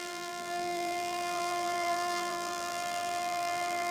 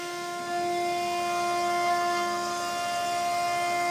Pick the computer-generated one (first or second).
first